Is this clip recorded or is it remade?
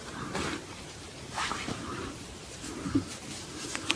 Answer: remade